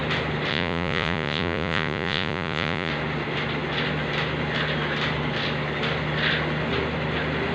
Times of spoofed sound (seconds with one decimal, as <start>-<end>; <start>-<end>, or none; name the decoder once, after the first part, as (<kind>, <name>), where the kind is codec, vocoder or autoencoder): 0.5-2.9 (vocoder, Vocos)